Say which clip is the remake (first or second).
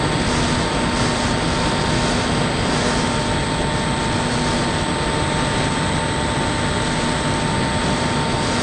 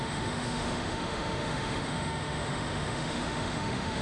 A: second